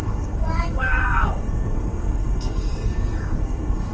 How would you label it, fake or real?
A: fake